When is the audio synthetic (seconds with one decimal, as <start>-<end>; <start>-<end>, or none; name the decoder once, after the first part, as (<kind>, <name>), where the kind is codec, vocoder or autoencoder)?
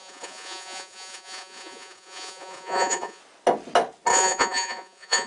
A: 0.0-3.2 (vocoder, Vocos); 4.1-5.3